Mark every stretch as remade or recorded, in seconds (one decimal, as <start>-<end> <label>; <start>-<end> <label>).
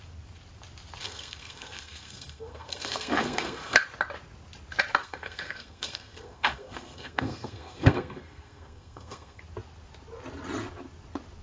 0.0-1.0 recorded; 1.0-3.8 remade; 3.8-5.0 recorded; 5.0-9.4 remade; 9.4-11.4 recorded